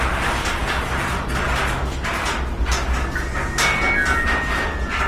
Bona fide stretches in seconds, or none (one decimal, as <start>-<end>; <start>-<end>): 0.0-5.1